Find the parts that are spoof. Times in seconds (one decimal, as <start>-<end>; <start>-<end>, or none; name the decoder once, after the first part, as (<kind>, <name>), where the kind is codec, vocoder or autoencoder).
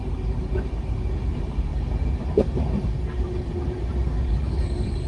0.0-1.7 (vocoder, BigVGAN v2); 3.4-5.1